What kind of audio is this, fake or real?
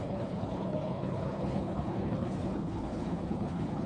fake